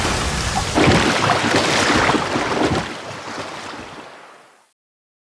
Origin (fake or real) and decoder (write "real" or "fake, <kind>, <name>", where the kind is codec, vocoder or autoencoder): real